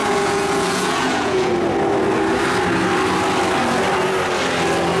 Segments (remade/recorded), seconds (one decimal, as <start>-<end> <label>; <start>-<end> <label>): 0.0-1.5 remade; 1.5-5.0 recorded

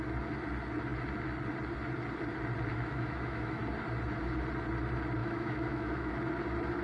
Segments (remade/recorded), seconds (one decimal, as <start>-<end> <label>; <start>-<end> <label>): 0.0-2.7 recorded; 2.7-3.6 remade; 3.6-5.2 recorded; 5.2-6.1 remade; 6.1-6.8 recorded

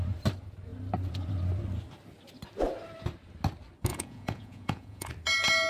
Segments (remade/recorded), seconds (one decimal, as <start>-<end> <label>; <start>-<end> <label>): 0.0-3.9 recorded; 3.9-5.1 remade; 5.1-5.7 recorded